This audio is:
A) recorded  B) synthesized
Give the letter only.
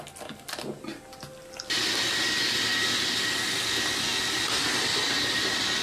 A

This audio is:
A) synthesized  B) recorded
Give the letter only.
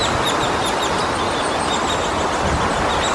B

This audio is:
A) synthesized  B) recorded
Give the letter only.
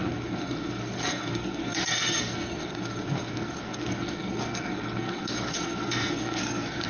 A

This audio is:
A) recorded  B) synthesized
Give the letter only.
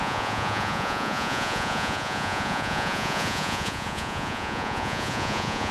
B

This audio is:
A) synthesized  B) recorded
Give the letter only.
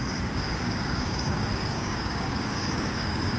A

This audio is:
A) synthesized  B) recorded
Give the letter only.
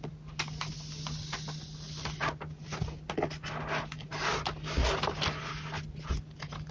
B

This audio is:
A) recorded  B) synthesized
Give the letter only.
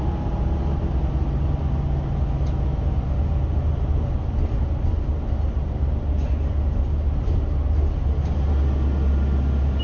A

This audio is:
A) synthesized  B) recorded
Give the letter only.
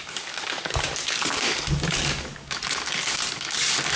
A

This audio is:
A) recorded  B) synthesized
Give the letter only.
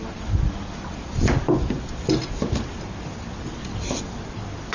A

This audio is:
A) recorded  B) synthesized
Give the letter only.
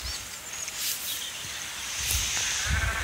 A